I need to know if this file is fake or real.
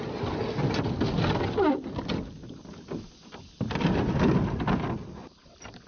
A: real